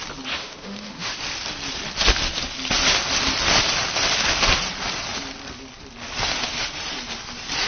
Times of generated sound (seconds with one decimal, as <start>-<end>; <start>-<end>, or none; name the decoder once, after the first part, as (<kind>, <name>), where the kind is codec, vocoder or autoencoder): 0.4-1.2 (autoencoder, DAC-VAE)